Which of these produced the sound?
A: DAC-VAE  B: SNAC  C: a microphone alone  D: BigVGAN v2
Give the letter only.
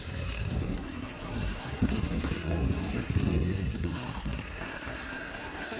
B